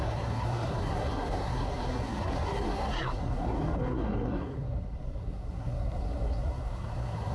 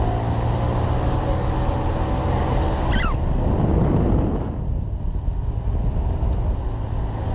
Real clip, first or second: second